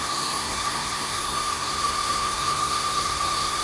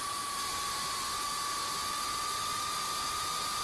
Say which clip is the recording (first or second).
second